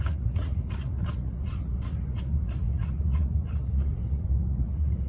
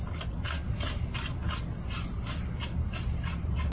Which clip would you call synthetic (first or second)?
first